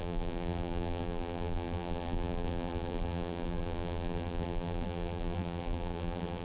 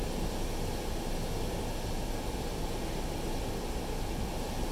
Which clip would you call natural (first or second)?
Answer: second